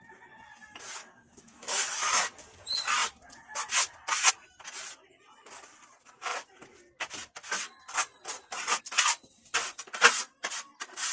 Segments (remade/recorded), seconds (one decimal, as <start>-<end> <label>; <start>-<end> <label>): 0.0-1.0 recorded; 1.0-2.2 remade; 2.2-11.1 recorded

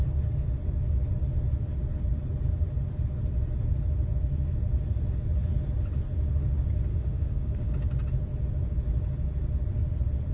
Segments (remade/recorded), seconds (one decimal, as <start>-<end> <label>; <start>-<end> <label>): 0.0-6.9 recorded; 6.9-7.7 remade; 7.7-10.3 recorded

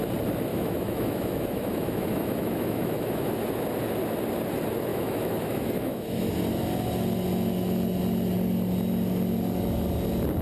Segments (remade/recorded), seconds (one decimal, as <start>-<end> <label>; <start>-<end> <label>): 0.0-0.5 recorded; 0.5-3.3 remade; 3.3-4.9 recorded; 4.9-6.3 remade; 6.3-10.4 recorded